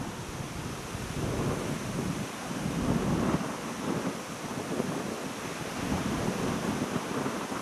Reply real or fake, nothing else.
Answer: real